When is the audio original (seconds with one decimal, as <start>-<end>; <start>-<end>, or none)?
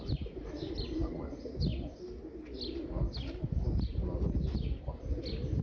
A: 0.0-5.6